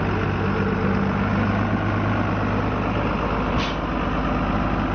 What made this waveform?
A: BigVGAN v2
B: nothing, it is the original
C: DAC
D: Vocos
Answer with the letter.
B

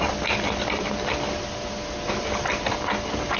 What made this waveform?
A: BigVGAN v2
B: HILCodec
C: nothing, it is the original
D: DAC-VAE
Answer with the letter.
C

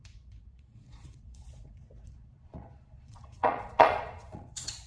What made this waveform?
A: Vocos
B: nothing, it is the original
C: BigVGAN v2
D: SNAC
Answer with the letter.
A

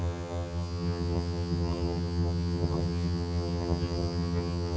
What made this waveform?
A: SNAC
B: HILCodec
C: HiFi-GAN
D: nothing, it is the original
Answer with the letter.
C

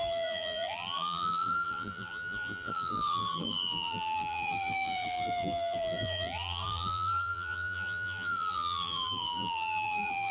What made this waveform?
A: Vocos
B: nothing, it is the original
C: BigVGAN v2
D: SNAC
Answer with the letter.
C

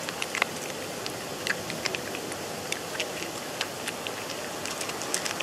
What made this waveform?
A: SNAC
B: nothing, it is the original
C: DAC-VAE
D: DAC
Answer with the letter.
B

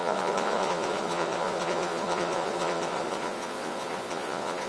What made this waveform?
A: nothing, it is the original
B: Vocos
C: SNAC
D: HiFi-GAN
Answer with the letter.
B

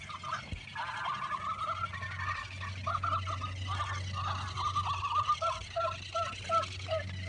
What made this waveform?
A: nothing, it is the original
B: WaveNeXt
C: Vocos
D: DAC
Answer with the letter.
A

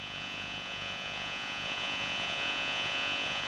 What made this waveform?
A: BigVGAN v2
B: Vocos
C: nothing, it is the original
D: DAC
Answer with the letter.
B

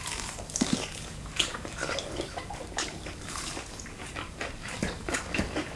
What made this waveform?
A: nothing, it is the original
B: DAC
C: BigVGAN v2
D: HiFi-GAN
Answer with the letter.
B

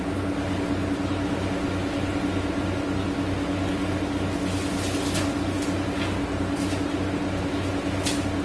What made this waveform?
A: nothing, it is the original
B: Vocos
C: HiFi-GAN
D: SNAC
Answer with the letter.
A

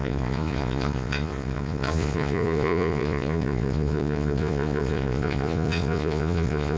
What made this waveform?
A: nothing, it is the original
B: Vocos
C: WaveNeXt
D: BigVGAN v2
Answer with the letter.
B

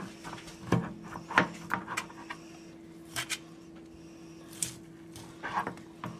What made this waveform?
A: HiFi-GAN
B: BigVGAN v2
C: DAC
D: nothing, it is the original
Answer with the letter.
D